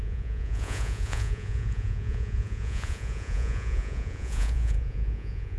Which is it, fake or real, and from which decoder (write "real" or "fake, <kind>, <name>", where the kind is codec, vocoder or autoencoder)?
fake, vocoder, Vocos